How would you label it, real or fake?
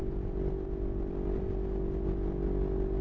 real